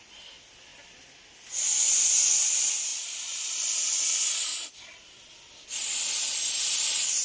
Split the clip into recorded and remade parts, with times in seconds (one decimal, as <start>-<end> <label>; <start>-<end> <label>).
0.0-7.2 recorded

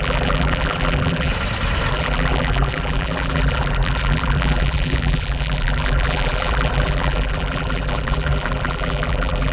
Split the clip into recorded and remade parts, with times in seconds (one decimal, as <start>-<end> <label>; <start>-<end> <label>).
0.0-1.3 remade; 1.3-1.9 recorded; 1.9-9.5 remade

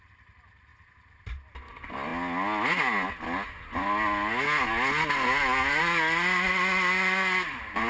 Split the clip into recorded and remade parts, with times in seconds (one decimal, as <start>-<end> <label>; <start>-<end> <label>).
0.0-0.7 remade; 0.7-1.7 recorded; 1.7-2.1 remade; 2.1-5.8 recorded; 5.8-7.9 remade